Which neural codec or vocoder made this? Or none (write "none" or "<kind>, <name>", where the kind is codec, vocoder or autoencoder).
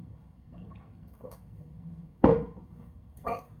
codec, SNAC